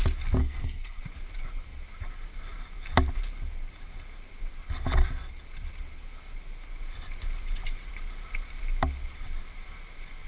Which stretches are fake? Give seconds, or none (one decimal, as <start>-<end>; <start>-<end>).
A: 0.4-1.0